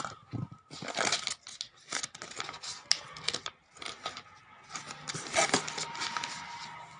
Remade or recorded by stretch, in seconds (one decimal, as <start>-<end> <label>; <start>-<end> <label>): 0.0-7.0 recorded